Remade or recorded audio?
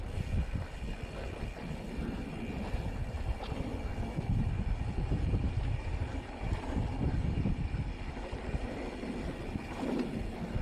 recorded